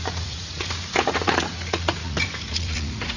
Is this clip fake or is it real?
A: fake